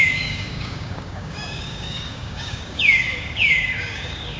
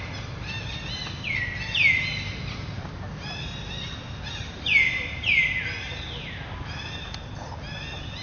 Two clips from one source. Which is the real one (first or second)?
second